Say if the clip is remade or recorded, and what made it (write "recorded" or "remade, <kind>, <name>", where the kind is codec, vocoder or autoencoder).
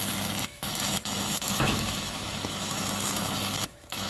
remade, autoencoder, DAC-VAE